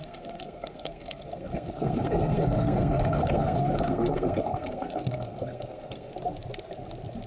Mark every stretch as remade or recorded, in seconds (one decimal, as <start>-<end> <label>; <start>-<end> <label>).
0.0-6.1 remade; 6.1-7.3 recorded